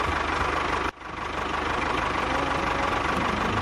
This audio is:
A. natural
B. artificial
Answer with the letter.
B